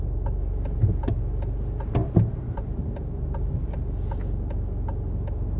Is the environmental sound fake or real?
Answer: real